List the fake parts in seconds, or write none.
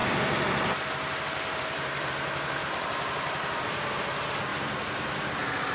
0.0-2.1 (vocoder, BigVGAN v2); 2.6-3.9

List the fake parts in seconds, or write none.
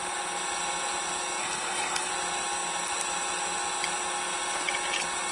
1.4-2.1 (codec, HILCodec)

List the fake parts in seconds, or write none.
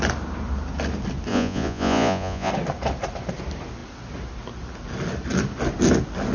1.3-2.5 (vocoder, Vocos)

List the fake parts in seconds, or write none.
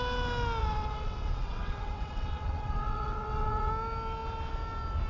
0.6-3.7 (vocoder, WaveNeXt)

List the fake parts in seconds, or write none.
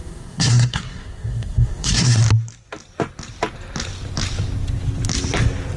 0.0-2.2 (codec, SNAC)